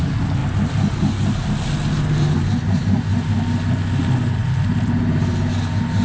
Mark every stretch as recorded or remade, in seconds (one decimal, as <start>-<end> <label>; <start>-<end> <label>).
0.0-6.0 recorded